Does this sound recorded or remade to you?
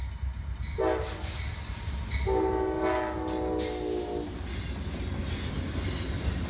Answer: recorded